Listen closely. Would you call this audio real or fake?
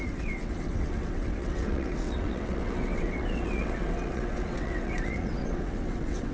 fake